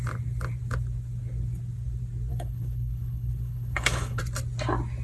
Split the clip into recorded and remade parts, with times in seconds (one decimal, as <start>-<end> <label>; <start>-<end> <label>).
0.0-2.3 recorded; 2.3-4.2 remade; 4.2-5.0 recorded

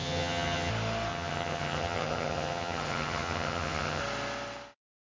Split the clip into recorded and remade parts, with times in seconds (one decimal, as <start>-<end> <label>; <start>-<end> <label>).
0.0-0.7 remade; 0.7-1.1 recorded; 1.1-4.0 remade; 4.0-5.1 recorded

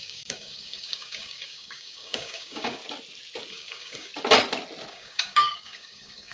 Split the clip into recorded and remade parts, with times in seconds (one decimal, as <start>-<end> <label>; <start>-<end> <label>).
0.0-2.8 remade; 2.8-3.5 recorded; 3.5-4.1 remade; 4.1-4.9 recorded; 4.9-6.3 remade

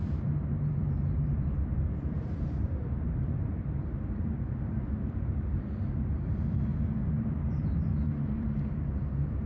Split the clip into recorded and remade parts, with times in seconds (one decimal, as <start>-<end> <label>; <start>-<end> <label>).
0.0-9.5 remade